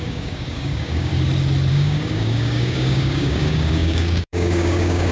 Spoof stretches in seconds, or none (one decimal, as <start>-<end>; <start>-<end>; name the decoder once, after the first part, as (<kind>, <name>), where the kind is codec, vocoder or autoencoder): 0.0-1.1 (codec, DAC); 1.7-5.1